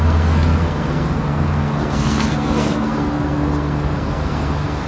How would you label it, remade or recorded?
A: remade